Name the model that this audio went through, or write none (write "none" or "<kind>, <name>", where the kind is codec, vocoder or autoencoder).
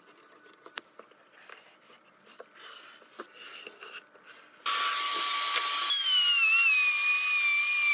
none